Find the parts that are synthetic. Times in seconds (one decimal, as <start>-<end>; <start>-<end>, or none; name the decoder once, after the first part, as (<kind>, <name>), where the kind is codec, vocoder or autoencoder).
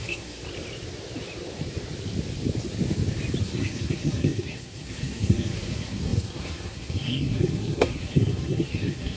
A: 0.0-0.4 (codec, SNAC); 3.4-9.2